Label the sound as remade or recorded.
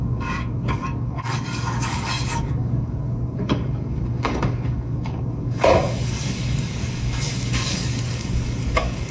remade